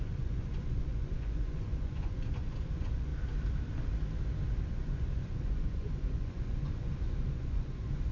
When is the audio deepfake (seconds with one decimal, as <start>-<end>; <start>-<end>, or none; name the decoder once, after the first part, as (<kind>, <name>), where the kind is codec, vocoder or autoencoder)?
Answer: 0.0-3.1 (vocoder, Vocos); 4.7-8.1

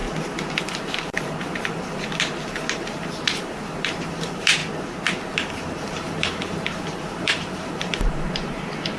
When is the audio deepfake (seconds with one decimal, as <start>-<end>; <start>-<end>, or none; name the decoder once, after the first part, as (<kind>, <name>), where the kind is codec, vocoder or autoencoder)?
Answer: 0.6-4.6 (vocoder, BigVGAN v2); 5.2-9.0

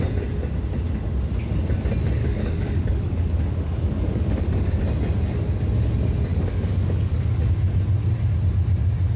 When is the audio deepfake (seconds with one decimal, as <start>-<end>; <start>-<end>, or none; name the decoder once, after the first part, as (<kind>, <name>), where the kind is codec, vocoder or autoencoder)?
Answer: 2.2-4.8 (codec, DAC); 6.3-7.2